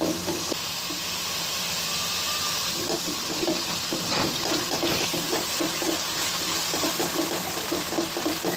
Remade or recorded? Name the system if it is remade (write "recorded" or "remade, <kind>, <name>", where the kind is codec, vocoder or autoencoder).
recorded